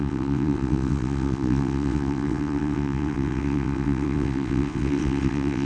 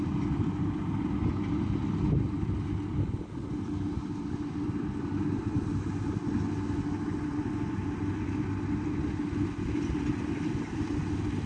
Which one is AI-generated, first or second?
first